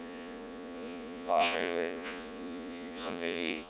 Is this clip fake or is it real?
fake